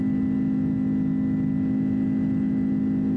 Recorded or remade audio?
recorded